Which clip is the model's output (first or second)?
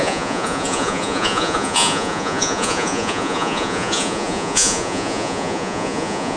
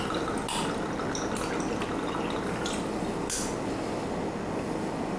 first